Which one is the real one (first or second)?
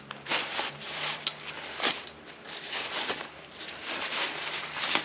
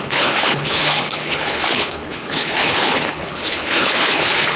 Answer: first